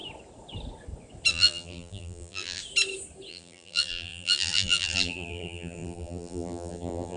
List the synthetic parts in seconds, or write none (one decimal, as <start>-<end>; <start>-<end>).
1.3-2.6; 3.3-7.2